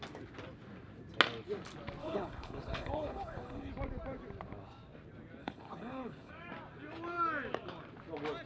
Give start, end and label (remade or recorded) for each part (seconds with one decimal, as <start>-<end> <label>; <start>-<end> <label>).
0.0-2.0 recorded; 2.0-3.7 remade; 3.7-5.4 recorded; 5.4-6.3 remade; 6.3-8.5 recorded